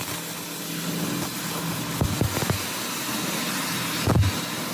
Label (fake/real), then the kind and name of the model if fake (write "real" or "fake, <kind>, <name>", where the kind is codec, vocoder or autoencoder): real